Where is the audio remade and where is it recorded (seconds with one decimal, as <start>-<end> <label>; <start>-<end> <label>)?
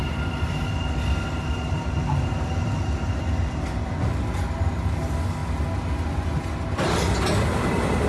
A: 0.0-8.1 recorded